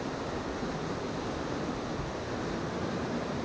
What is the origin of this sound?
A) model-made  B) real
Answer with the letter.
B